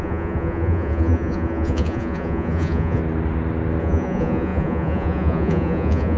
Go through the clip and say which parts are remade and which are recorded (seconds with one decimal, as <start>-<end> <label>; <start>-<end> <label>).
0.0-3.0 remade; 3.0-3.8 recorded; 3.8-6.2 remade